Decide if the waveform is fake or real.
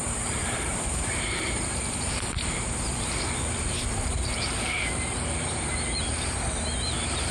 fake